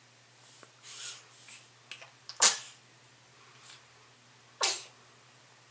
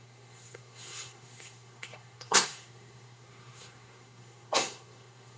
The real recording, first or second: first